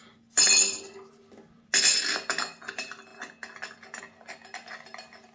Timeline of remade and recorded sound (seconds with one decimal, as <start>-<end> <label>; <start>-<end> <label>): 0.0-5.3 recorded